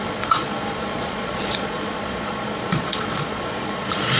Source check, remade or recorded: remade